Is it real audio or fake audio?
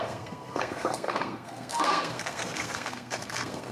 fake